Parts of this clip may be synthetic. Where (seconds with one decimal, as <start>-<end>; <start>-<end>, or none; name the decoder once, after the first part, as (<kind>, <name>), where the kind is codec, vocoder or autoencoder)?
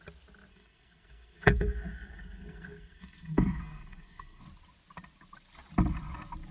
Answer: 0.5-4.4 (codec, SNAC)